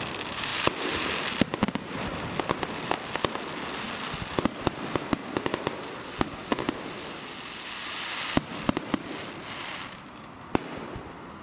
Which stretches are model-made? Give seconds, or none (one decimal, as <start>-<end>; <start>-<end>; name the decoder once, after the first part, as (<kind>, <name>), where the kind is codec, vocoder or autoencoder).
none